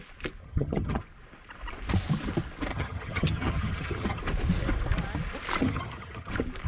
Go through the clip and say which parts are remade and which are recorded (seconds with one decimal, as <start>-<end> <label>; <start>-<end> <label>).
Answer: 0.0-0.4 recorded; 0.4-1.0 remade; 1.0-2.7 recorded; 2.7-4.2 remade; 4.2-5.6 recorded; 5.6-6.3 remade; 6.3-6.7 recorded